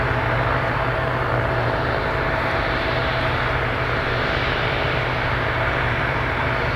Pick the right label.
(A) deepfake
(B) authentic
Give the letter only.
A